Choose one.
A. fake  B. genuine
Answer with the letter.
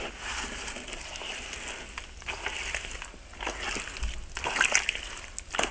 B